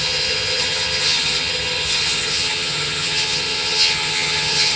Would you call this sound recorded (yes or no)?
no